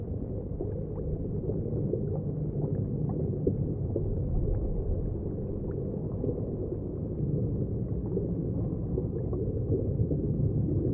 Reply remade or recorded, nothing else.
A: recorded